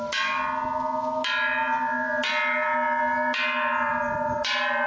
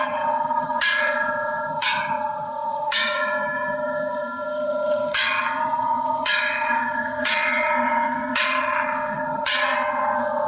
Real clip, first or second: first